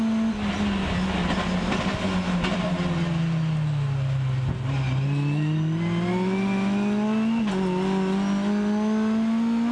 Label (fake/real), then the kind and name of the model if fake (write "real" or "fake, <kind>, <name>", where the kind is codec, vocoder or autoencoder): real